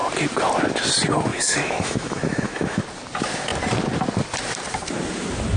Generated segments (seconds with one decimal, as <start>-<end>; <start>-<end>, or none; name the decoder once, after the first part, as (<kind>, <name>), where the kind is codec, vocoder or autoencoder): 1.3-2.8 (autoencoder, DAC-VAE)